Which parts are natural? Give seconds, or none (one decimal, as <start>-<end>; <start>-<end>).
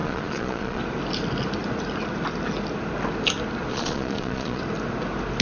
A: 0.8-3.7; 4.6-5.4